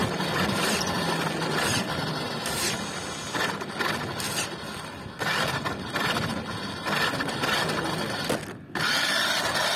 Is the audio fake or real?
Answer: real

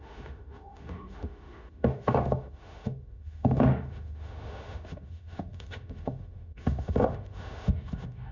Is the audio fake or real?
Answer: fake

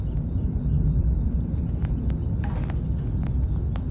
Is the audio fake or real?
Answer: real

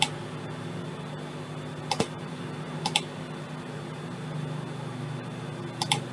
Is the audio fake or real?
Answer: real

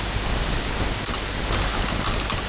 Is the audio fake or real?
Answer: real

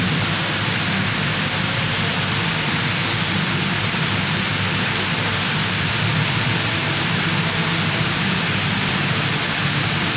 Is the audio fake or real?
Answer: fake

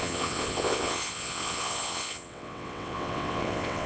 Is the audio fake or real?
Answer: fake